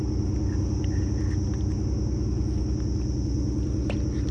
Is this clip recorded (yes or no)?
yes